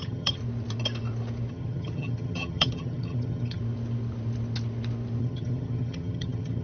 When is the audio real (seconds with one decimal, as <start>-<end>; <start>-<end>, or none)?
0.4-1.5; 3.6-5.2